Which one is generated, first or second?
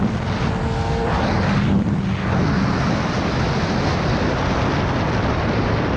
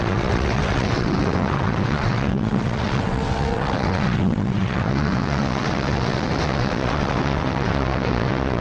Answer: second